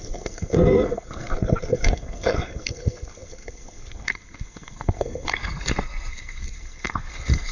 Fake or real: fake